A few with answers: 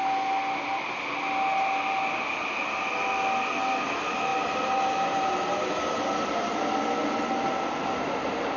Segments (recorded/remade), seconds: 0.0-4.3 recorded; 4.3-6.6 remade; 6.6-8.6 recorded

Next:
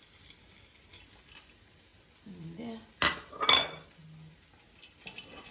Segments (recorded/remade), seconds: 0.0-5.5 recorded